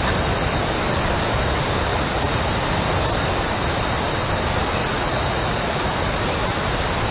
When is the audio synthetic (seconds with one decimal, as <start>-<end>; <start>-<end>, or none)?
1.9-2.4; 4.8-5.9